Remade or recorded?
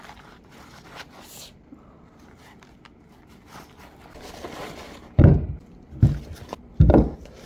recorded